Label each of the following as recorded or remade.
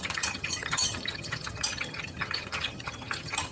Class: remade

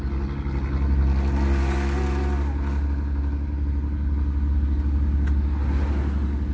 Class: recorded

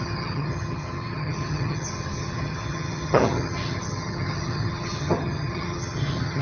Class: remade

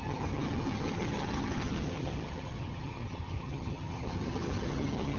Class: remade